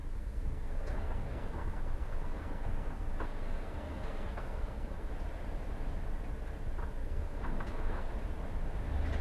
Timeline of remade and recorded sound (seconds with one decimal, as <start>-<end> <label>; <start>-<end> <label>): 0.0-5.1 remade; 5.1-7.0 recorded; 7.0-8.1 remade; 8.1-9.2 recorded